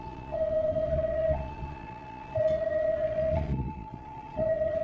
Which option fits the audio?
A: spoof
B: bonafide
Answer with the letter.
A